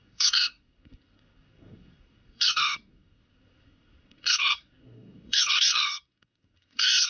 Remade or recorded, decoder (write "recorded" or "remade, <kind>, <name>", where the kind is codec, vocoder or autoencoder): remade, codec, SNAC